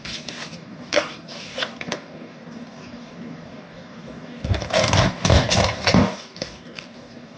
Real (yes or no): no